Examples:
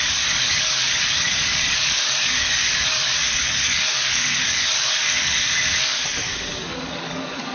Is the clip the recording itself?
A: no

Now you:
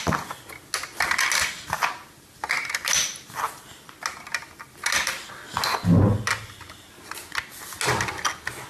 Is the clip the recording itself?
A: yes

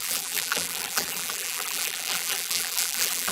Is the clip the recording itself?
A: no